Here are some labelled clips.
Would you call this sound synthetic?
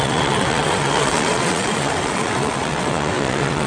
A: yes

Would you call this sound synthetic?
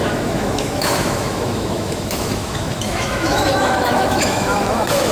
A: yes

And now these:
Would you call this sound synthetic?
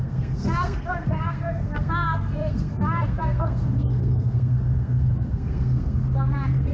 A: yes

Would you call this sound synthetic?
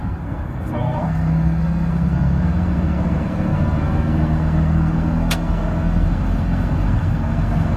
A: yes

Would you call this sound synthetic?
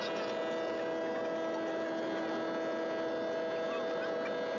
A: no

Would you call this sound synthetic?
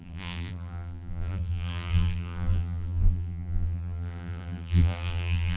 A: yes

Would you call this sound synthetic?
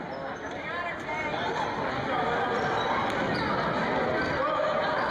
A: no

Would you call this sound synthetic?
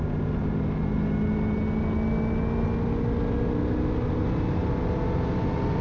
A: no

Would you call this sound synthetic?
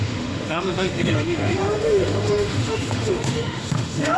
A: yes